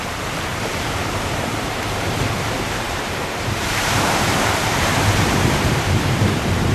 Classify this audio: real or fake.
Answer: fake